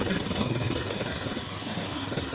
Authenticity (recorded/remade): remade